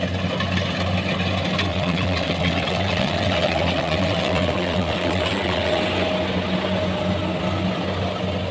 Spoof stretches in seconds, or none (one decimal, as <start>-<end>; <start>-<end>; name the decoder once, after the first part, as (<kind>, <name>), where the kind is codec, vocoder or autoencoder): 1.7-5.8 (vocoder, WaveNeXt)